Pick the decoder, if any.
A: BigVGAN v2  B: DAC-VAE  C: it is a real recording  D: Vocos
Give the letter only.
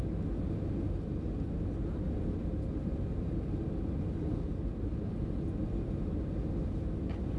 C